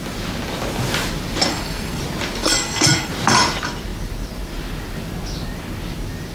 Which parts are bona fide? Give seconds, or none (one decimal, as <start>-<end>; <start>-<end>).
0.0-1.5; 2.0-2.4; 3.1-6.3